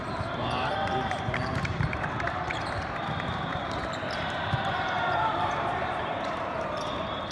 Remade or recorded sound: remade